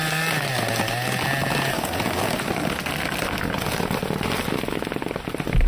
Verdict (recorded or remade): recorded